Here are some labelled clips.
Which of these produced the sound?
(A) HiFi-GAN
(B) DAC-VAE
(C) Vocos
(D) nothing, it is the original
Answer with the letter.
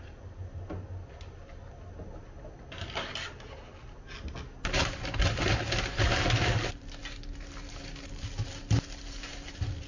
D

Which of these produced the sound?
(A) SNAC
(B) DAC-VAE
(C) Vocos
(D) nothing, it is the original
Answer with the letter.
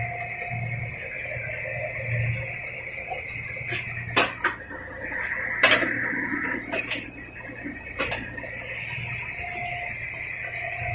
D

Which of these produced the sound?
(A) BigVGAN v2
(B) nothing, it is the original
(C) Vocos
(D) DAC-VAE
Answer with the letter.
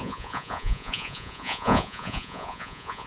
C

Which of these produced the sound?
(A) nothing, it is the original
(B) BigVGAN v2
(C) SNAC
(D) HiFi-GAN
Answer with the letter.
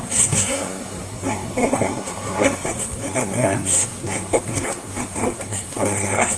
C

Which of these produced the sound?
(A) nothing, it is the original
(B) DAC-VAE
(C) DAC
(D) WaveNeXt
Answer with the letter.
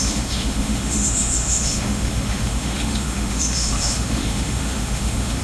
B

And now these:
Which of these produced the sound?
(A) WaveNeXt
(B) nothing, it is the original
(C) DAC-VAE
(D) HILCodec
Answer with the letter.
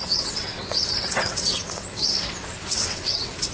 A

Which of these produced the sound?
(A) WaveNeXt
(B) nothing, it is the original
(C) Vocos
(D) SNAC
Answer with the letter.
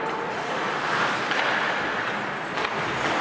B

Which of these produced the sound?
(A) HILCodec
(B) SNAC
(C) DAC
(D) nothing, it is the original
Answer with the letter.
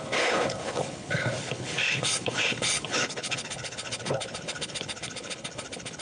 A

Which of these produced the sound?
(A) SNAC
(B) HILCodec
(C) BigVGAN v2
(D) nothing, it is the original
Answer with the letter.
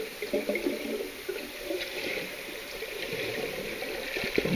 D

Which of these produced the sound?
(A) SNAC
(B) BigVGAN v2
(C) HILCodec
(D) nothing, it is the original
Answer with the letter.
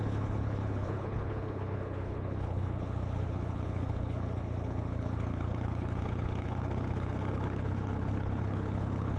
C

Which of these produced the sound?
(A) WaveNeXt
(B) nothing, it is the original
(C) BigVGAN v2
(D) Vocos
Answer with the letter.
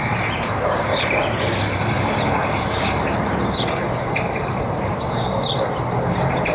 C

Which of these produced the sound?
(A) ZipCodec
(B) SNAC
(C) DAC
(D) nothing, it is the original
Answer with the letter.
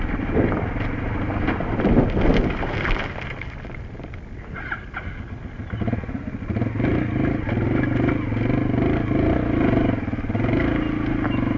D